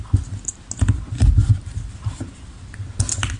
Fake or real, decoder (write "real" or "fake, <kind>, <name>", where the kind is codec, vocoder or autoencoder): real